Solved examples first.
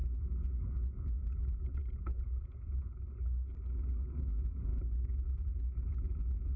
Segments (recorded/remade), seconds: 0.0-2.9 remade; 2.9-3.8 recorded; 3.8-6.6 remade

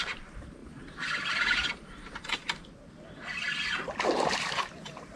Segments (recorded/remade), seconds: 0.0-2.4 remade; 2.4-4.4 recorded; 4.4-5.2 remade

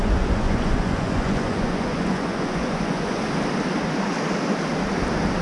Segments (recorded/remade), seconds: 0.0-3.2 remade; 3.2-5.4 recorded

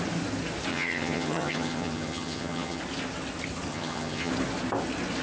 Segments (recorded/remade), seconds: 0.0-0.7 recorded; 0.7-2.8 remade; 2.8-3.7 recorded; 3.7-4.3 remade; 4.3-5.2 recorded

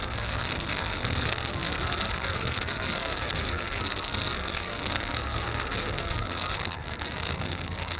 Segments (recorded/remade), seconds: 0.0-8.0 remade

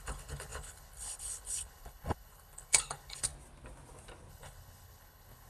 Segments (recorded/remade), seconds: 0.0-3.3 remade; 3.3-4.3 recorded; 4.3-5.5 remade

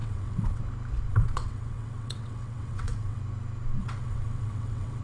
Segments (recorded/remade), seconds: 0.0-0.6 remade; 0.6-1.1 recorded; 1.1-3.2 remade; 3.2-3.8 recorded; 3.8-5.0 remade

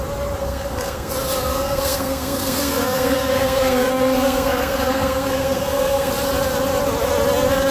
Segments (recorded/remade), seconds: 0.0-0.4 recorded; 0.4-1.1 remade; 1.1-1.5 recorded; 1.5-6.1 remade; 6.1-7.7 recorded